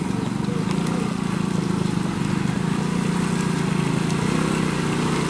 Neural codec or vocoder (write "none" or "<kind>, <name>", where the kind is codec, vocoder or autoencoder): none